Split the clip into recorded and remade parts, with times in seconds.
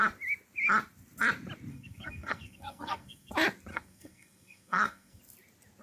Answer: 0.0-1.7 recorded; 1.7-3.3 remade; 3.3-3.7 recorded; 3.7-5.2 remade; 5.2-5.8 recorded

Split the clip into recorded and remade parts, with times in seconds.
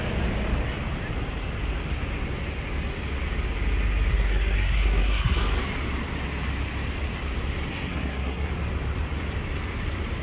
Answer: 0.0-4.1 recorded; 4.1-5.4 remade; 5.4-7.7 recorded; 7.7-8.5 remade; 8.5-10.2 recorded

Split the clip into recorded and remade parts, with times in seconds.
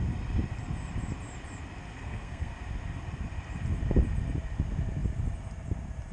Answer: 0.0-1.9 recorded; 1.9-2.5 remade; 2.5-6.1 recorded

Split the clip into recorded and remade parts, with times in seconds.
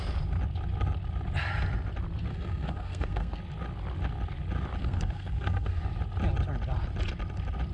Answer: 0.0-2.3 recorded; 2.3-3.4 remade; 3.4-4.8 recorded; 4.8-5.8 remade; 5.8-7.7 recorded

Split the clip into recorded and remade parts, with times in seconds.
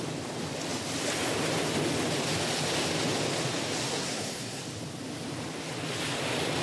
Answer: 0.0-3.9 recorded; 3.9-4.6 remade; 4.6-6.6 recorded